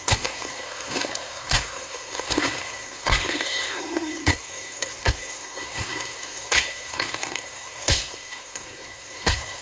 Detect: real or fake fake